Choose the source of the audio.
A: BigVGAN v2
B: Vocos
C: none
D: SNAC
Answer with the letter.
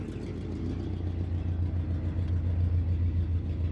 C